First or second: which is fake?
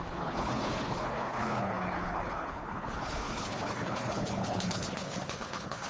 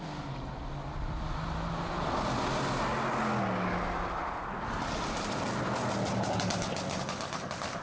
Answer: first